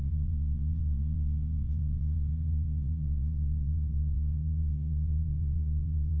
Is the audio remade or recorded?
remade